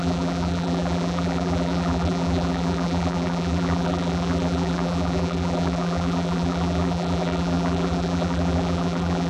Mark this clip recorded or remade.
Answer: remade